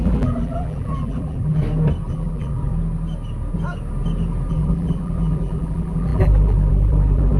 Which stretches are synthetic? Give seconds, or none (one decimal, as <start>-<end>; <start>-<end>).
0.0-1.6; 2.1-2.7; 4.5-7.4